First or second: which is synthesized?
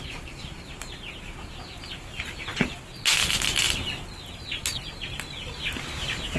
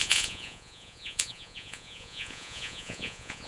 second